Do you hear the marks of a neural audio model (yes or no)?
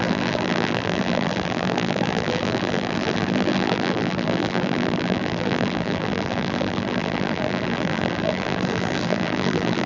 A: yes